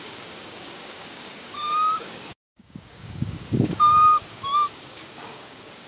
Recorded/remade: remade